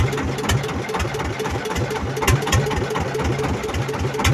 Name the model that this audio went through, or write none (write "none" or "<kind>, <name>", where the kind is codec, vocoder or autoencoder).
none